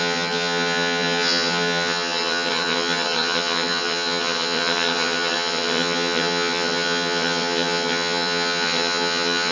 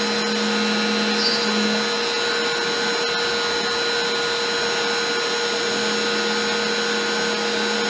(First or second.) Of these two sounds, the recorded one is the second